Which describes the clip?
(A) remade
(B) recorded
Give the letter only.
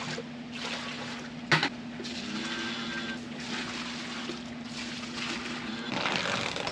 B